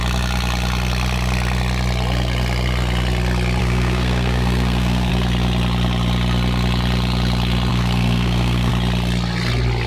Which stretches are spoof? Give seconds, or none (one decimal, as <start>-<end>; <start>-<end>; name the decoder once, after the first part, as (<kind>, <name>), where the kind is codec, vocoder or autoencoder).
3.6-5.1 (codec, SNAC); 7.7-8.7

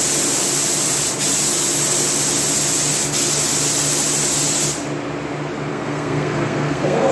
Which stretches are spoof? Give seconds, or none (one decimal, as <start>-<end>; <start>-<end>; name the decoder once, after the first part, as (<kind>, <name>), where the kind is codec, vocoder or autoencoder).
5.7-7.1 (codec, SNAC)

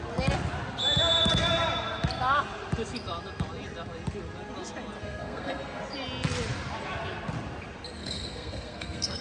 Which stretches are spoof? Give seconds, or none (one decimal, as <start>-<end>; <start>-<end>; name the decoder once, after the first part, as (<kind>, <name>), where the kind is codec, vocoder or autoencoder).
5.0-5.8 (codec, SNAC); 8.0-9.2

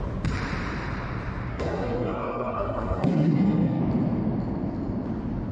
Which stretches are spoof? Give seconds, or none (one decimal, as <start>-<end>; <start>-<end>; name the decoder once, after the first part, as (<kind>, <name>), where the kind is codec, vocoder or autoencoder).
1.5-3.8 (codec, SNAC)

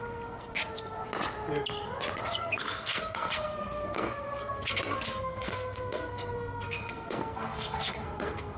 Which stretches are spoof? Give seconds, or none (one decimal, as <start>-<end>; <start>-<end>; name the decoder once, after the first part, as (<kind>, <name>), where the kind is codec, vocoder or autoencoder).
0.0-0.6 (codec, SNAC); 2.4-8.6

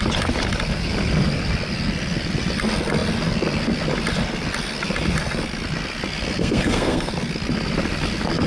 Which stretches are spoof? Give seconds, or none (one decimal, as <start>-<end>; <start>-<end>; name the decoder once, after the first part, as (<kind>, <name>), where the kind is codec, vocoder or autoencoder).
6.4-7.1 (codec, SNAC)

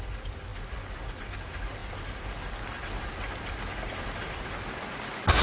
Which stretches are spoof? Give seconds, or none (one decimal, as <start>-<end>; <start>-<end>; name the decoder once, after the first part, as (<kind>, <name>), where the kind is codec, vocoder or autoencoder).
none